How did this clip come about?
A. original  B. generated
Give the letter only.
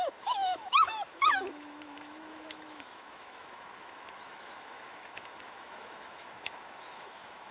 B